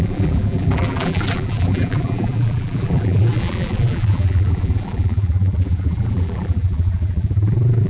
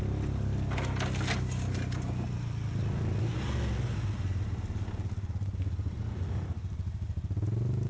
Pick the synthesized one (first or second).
first